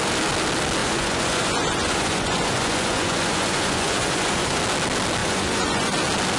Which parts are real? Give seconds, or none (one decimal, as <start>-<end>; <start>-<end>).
0.0-0.8; 4.6-5.2; 5.9-6.4